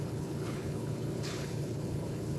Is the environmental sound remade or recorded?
remade